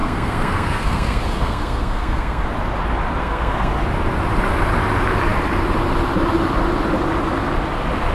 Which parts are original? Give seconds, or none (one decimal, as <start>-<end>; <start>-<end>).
2.4-3.2; 3.7-8.1